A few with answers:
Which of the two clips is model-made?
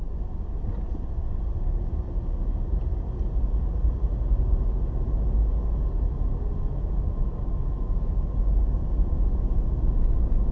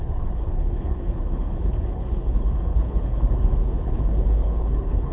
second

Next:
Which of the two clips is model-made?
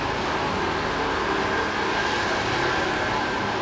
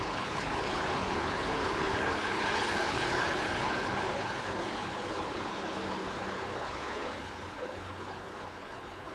second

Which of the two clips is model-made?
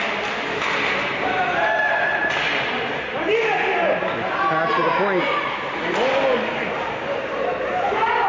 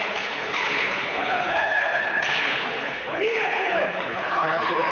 second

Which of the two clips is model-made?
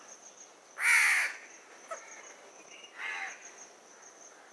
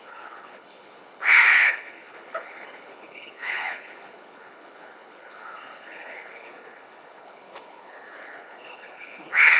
second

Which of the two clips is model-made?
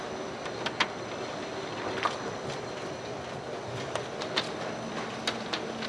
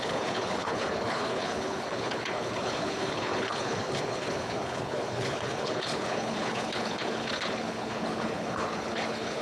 second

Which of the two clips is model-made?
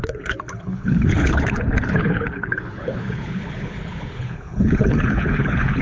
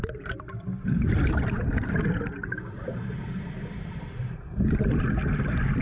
first